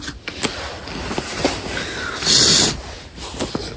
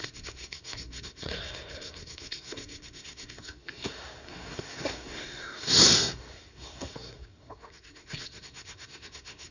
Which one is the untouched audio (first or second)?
first